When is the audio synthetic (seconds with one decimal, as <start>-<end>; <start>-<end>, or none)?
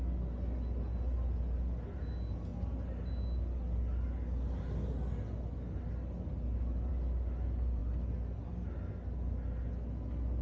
none